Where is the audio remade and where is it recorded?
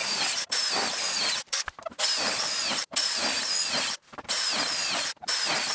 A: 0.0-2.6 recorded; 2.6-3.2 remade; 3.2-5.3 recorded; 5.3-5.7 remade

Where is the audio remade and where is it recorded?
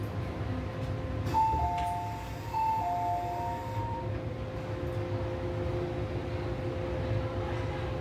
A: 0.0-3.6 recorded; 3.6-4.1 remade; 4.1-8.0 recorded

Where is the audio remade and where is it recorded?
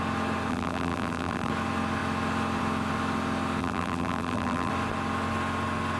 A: 0.0-0.5 recorded; 0.5-1.5 remade; 1.5-3.6 recorded; 3.6-4.7 remade; 4.7-6.0 recorded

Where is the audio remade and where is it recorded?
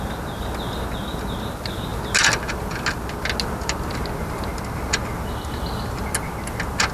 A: 0.0-6.9 recorded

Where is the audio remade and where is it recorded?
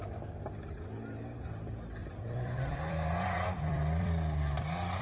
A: 0.0-2.0 recorded; 2.0-5.0 remade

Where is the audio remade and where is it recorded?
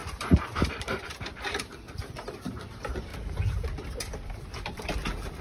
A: 0.0-1.6 remade; 1.6-3.1 recorded; 3.1-4.4 remade; 4.4-5.4 recorded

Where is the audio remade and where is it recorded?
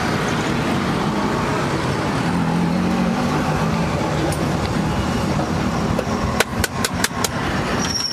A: 0.0-6.5 recorded; 6.5-7.4 remade; 7.4-8.1 recorded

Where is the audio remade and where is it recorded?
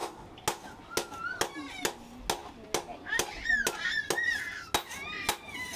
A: 0.0-5.8 recorded